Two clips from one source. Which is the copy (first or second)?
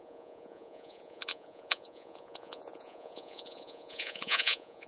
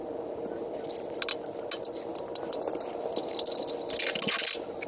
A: first